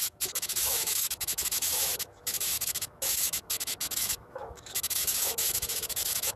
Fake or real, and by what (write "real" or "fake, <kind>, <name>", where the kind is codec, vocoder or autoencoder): fake, autoencoder, DAC-VAE